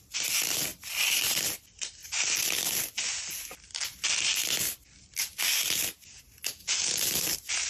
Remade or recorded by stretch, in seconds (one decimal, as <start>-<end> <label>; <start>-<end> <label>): 0.0-0.7 recorded; 0.7-1.4 remade; 1.4-7.7 recorded